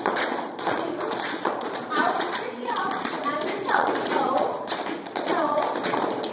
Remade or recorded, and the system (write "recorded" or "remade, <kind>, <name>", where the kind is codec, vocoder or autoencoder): remade, vocoder, Vocos